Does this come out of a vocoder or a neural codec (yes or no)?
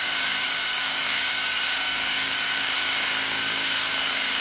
yes